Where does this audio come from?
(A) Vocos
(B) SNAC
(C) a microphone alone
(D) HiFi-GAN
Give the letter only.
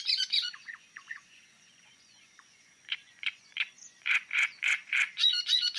A